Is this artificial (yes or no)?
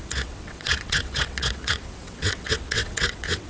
yes